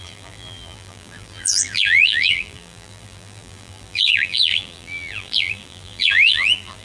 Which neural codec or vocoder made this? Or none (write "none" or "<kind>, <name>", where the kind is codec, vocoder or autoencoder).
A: vocoder, BigVGAN v2